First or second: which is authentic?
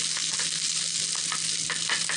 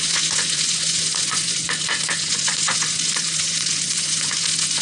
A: first